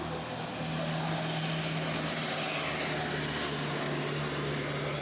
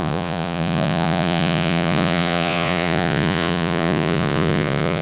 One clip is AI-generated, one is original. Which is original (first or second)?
first